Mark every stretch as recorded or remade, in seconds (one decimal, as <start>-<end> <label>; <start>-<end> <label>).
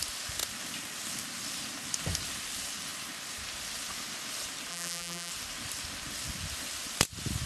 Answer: 0.0-4.7 recorded; 4.7-5.3 remade; 5.3-7.5 recorded